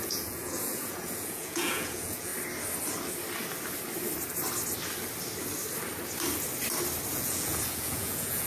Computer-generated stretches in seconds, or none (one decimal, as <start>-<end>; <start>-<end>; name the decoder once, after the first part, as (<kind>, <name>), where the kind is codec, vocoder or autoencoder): 0.0-2.3 (vocoder, Vocos); 7.1-8.5